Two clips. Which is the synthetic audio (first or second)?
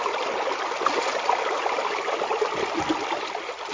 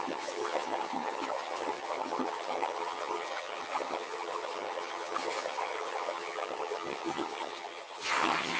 second